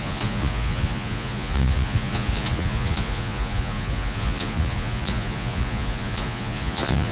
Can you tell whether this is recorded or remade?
remade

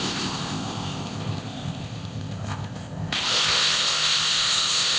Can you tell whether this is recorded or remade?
remade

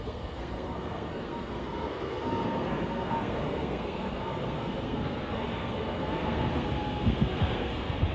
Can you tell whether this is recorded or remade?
remade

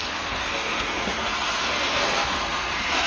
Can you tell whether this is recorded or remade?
remade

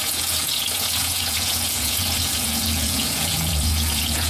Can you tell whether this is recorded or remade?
remade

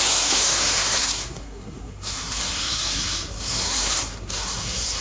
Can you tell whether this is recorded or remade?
remade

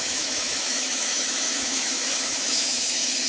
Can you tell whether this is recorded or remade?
remade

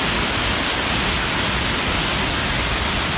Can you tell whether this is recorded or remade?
recorded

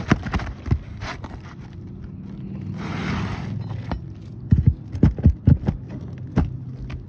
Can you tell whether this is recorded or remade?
recorded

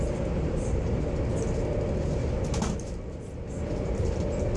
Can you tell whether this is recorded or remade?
recorded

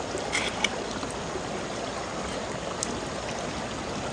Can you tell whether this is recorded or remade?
recorded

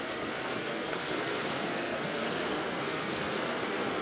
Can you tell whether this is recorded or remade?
remade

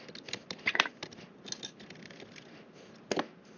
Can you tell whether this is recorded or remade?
recorded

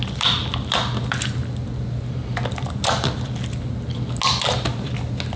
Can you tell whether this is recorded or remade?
recorded